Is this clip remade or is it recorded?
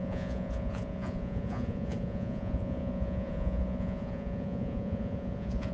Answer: remade